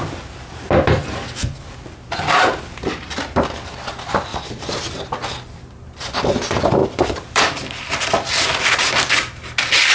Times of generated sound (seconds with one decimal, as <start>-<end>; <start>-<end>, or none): 4.3-5.0; 6.8-8.9

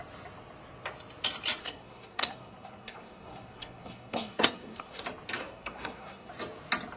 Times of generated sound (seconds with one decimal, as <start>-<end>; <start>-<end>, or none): 1.6-5.0; 5.4-6.3

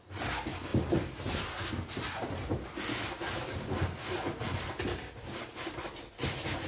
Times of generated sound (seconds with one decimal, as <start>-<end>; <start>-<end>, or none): 0.7-1.7

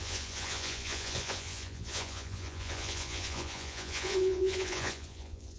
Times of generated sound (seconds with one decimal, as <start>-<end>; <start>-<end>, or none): 0.0-5.6

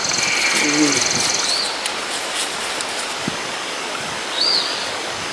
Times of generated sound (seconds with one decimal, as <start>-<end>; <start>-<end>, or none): 3.2-5.3

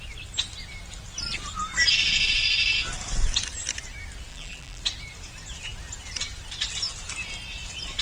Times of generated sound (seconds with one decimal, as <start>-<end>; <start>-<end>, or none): 4.3-4.8

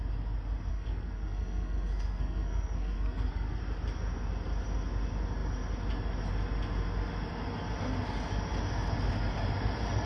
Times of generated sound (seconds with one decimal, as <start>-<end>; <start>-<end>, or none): 0.7-3.6

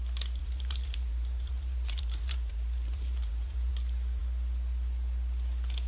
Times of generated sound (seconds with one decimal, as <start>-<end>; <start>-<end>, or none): 0.4-3.7